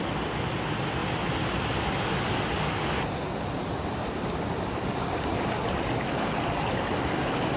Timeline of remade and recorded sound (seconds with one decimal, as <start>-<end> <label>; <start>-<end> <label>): 0.0-7.6 recorded

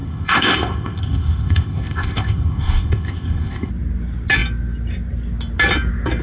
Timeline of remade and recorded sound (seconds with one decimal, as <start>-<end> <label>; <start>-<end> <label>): 0.0-3.7 remade; 3.7-6.2 recorded

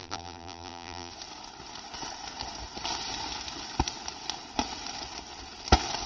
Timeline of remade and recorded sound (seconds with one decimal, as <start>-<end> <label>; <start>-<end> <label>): 0.0-1.1 remade; 1.1-6.1 recorded

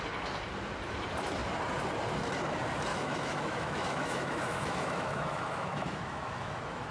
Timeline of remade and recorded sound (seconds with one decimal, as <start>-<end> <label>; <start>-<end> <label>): 0.0-2.9 recorded; 2.9-6.9 remade

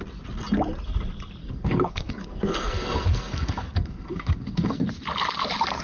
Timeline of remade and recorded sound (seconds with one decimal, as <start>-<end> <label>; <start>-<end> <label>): 0.0-1.4 recorded; 1.4-4.9 remade; 4.9-5.8 recorded